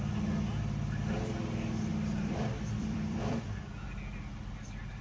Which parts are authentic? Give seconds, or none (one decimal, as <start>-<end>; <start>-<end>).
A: 0.0-1.9; 3.4-5.0